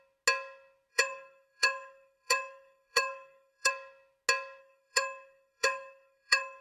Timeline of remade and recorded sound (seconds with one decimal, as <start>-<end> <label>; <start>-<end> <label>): 0.0-0.9 recorded; 0.9-3.7 remade; 3.7-4.6 recorded; 4.6-6.6 remade